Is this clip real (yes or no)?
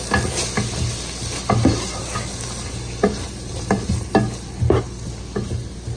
yes